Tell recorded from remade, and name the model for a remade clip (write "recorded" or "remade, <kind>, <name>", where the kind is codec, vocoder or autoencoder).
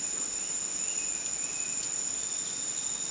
recorded